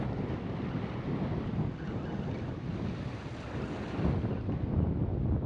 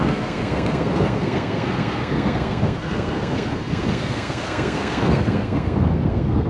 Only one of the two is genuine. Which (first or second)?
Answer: first